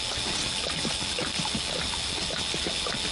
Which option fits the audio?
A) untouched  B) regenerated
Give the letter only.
A